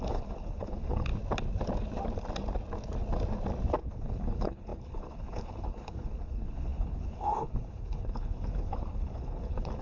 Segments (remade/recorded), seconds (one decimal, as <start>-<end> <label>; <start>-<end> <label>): 0.0-1.1 remade; 1.1-3.8 recorded; 3.8-9.8 remade